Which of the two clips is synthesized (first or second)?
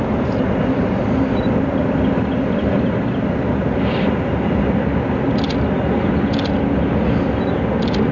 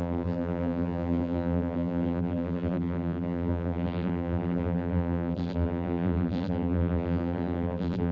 second